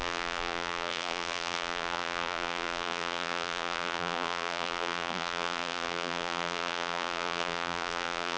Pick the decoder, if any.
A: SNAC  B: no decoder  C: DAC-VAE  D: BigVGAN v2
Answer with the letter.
D